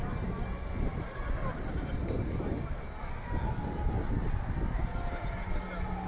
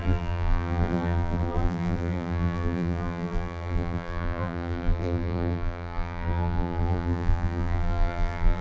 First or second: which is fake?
second